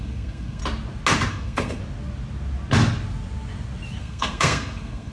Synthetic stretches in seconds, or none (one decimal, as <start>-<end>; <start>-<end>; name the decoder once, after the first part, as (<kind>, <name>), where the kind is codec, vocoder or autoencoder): 0.0-0.6 (codec, SNAC); 1.3-1.8; 4.0-5.1